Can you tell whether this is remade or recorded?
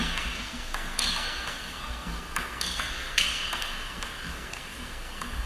remade